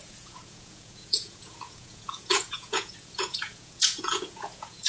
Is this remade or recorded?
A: remade